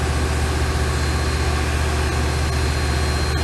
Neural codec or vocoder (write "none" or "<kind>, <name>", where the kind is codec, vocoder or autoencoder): none